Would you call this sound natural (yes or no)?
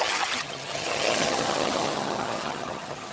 no